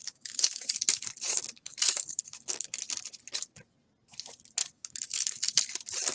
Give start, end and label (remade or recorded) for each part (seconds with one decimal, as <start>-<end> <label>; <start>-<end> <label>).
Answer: 0.0-2.8 remade; 2.8-4.6 recorded; 4.6-5.6 remade; 5.6-6.1 recorded